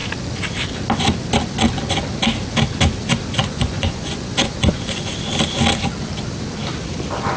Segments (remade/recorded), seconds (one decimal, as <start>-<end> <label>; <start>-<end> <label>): 0.0-3.4 recorded; 3.4-5.1 remade; 5.1-7.4 recorded